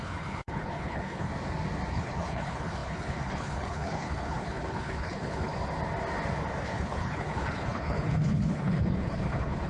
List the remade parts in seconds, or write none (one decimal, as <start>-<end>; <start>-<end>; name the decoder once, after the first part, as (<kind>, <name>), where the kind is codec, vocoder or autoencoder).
0.0-1.3 (codec, HILCodec); 1.9-5.5; 6.6-9.7